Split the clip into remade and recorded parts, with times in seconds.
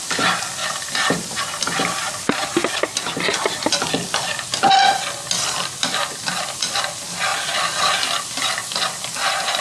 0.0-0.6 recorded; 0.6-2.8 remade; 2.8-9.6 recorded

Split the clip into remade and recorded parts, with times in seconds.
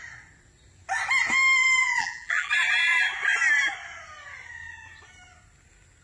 0.0-1.8 recorded; 1.8-2.5 remade; 2.5-6.0 recorded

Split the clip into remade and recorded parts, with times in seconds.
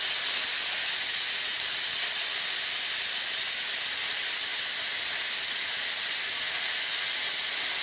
0.0-4.5 recorded; 4.5-6.5 remade; 6.5-7.8 recorded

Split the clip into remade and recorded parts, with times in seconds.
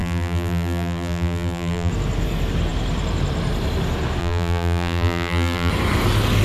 0.0-1.9 remade; 1.9-4.2 recorded; 4.2-5.7 remade; 5.7-6.4 recorded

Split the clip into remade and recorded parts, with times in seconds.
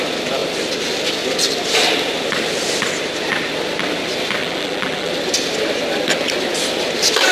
0.0-4.4 recorded; 4.4-5.1 remade; 5.1-7.3 recorded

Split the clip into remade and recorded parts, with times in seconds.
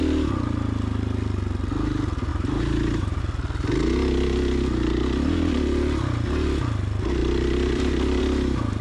0.0-2.3 recorded; 2.3-3.2 remade; 3.2-7.2 recorded; 7.2-8.2 remade; 8.2-8.8 recorded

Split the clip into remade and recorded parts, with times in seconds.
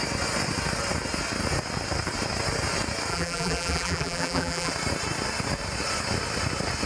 0.0-3.1 recorded; 3.1-4.7 remade; 4.7-6.9 recorded